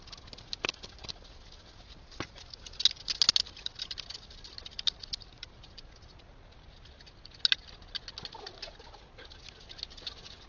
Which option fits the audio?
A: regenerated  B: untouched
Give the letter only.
B